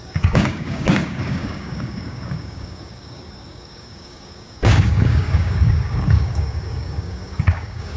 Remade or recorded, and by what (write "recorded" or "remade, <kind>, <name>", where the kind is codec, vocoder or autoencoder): remade, codec, DAC